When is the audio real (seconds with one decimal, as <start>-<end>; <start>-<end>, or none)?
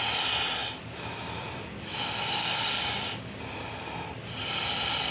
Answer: 0.0-2.4; 3.4-5.1